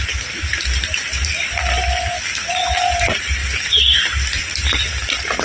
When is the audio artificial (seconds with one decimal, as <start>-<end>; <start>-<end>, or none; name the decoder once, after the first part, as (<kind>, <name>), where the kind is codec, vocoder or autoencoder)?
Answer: 0.0-5.4 (vocoder, BigVGAN v2)